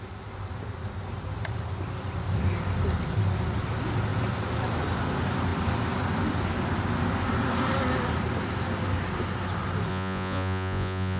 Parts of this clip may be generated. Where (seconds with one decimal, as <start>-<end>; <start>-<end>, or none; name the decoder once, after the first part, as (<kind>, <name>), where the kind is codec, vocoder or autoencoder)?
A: 9.9-11.2 (vocoder, Vocos)